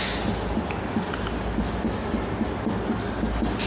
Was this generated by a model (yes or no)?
no